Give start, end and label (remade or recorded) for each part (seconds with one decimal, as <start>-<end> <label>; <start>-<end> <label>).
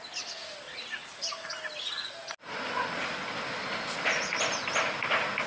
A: 0.0-5.5 recorded